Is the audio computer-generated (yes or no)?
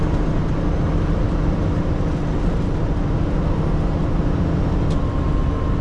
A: no